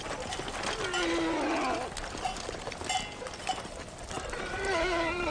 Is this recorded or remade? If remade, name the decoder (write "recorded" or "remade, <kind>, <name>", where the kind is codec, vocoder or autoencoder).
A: recorded